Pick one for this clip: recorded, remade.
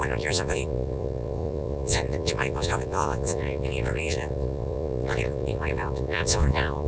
remade